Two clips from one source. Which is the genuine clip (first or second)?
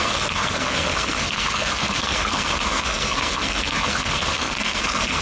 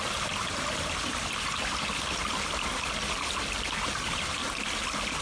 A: second